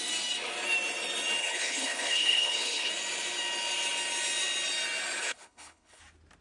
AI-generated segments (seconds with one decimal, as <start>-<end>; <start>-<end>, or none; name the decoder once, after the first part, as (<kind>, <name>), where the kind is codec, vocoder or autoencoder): 1.4-2.9 (codec, HILCodec); 5.2-6.0